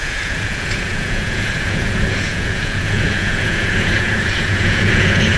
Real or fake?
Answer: fake